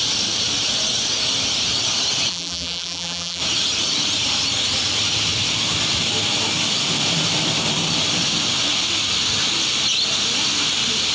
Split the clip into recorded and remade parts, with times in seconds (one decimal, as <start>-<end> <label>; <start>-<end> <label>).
0.0-2.3 recorded; 2.3-3.4 remade; 3.4-11.1 recorded